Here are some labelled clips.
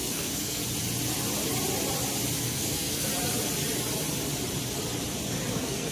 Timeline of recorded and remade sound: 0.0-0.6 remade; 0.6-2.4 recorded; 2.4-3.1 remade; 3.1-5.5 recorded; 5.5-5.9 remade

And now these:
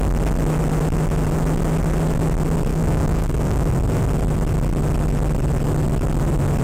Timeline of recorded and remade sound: 0.0-2.7 recorded; 2.7-3.7 remade; 3.7-6.6 recorded

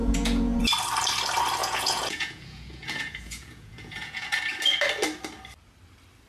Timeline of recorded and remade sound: 0.0-0.6 remade; 0.6-1.6 recorded; 1.6-4.4 remade; 4.4-6.3 recorded

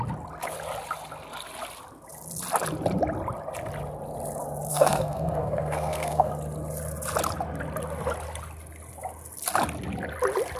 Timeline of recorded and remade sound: 0.0-4.7 recorded; 4.7-6.3 remade; 6.3-10.6 recorded

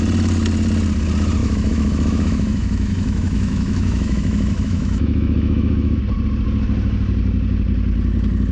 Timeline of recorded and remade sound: 0.0-1.4 recorded; 1.4-6.0 remade; 6.0-8.5 recorded

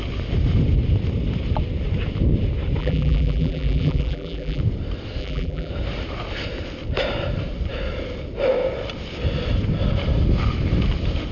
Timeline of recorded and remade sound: 0.0-2.8 recorded; 2.8-4.6 remade; 4.6-5.2 recorded; 5.2-5.7 remade; 5.7-11.3 recorded

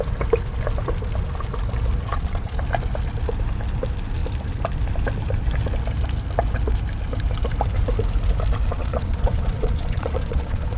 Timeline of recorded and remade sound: 0.0-2.1 recorded; 2.1-2.6 remade; 2.6-8.7 recorded; 8.7-10.8 remade

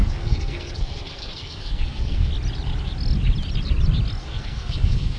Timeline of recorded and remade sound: 0.0-2.3 remade; 2.3-4.2 recorded; 4.2-5.2 remade